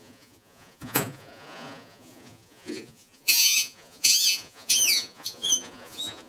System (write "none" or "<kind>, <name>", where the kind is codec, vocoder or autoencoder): vocoder, Vocos